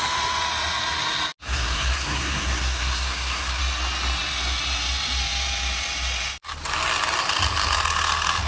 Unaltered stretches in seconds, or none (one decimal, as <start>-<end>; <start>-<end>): 0.0-1.4; 3.6-8.5